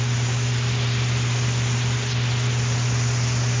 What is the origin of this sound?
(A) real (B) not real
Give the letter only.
A